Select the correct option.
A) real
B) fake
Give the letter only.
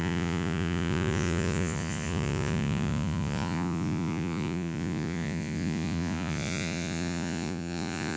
B